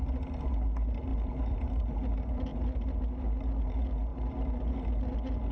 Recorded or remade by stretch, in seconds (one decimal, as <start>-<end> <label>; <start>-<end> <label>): 0.0-5.5 recorded